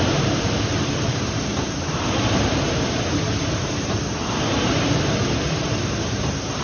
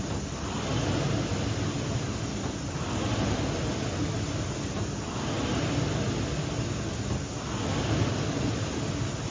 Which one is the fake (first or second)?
first